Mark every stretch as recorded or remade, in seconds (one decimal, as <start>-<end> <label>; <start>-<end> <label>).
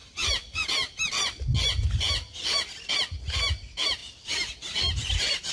0.0-5.5 recorded